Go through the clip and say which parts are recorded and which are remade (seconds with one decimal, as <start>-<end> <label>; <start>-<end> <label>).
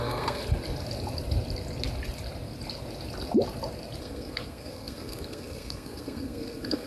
0.0-0.4 remade; 0.4-4.0 recorded; 4.0-6.9 remade